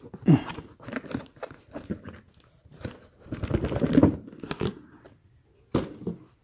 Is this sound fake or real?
real